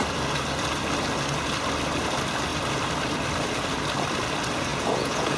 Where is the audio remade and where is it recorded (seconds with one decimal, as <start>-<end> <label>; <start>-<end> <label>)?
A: 0.0-4.7 recorded; 4.7-5.4 remade